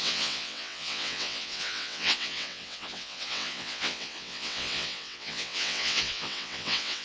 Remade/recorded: remade